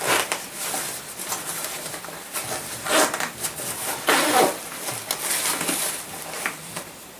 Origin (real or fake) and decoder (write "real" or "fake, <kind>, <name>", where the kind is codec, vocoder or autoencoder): fake, vocoder, BigVGAN v2